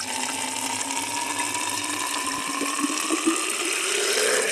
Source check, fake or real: real